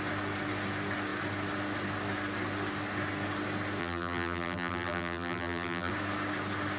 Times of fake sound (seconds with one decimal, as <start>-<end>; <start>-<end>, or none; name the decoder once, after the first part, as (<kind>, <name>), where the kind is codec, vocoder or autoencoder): 3.8-5.9 (vocoder, BigVGAN v2)